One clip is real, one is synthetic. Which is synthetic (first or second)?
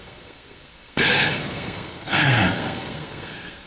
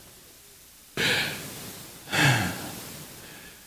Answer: first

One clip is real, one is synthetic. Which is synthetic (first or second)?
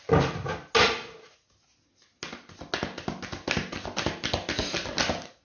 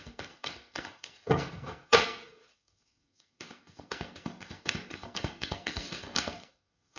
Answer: second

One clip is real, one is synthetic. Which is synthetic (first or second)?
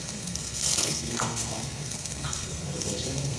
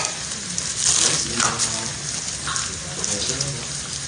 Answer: first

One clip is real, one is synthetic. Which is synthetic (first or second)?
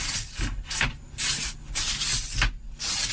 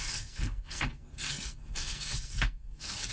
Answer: second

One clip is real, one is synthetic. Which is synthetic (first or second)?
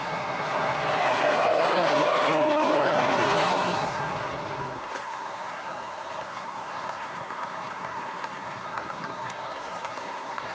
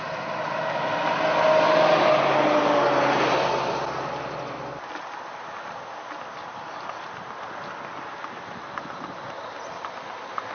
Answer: first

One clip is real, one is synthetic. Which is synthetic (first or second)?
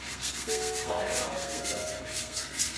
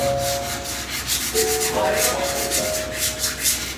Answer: first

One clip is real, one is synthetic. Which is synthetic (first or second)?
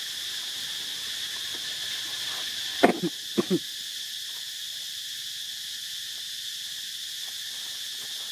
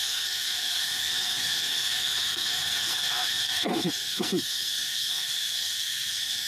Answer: second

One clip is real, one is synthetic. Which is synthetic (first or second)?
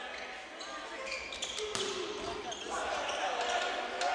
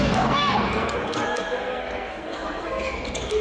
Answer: second